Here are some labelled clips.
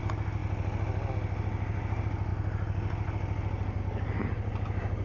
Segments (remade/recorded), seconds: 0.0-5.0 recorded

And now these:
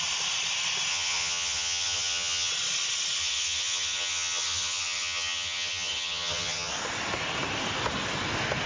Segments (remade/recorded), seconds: 0.0-0.9 recorded; 0.9-2.5 remade; 2.5-3.2 recorded; 3.2-6.7 remade; 6.7-8.7 recorded